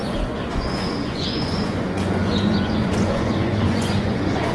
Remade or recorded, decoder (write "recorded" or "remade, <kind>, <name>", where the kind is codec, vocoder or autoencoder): remade, vocoder, Vocos